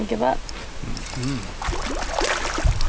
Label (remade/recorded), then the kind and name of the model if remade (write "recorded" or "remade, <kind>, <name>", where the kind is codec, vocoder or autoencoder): recorded